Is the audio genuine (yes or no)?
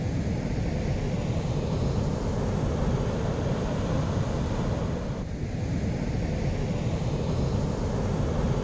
yes